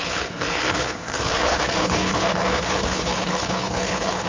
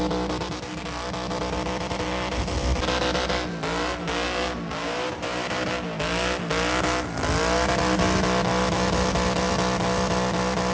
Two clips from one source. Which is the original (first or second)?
second